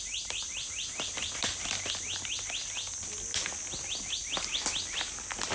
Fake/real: real